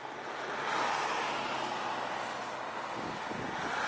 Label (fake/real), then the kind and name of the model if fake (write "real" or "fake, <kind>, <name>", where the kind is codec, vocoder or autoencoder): real